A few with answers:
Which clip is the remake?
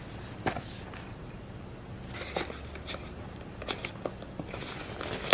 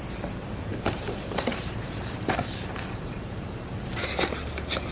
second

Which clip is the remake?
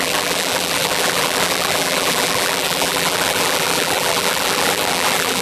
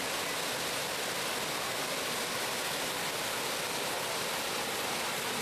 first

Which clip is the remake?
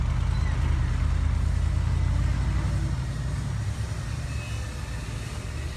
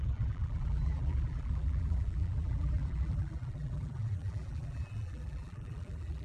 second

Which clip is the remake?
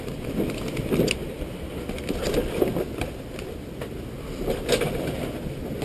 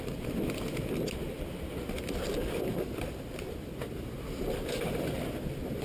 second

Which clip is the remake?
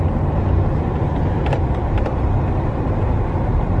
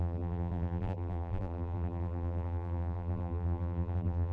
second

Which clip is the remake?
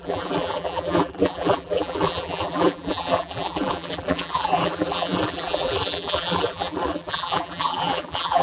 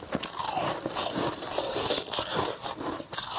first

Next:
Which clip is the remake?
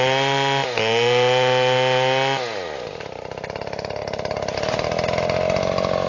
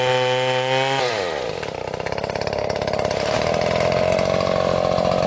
second